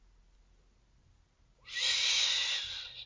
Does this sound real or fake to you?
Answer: real